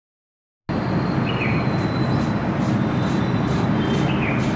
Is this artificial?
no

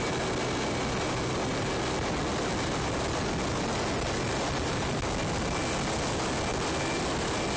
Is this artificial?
no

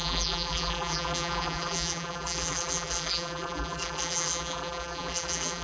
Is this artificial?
yes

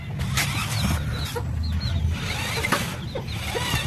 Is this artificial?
no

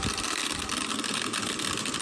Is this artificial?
no